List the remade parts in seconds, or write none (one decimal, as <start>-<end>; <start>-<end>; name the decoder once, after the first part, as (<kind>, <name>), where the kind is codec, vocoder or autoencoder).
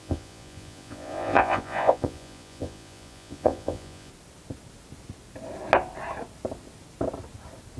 0.0-4.1 (vocoder, Vocos)